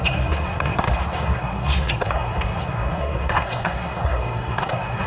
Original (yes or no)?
no